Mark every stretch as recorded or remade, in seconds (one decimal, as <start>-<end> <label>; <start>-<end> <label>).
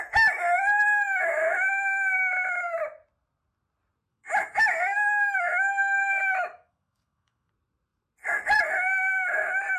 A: 0.0-4.1 recorded; 4.1-7.5 remade; 7.5-9.8 recorded